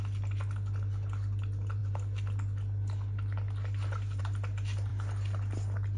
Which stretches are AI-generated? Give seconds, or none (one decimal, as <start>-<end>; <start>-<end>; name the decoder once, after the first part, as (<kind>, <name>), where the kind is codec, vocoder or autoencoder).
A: none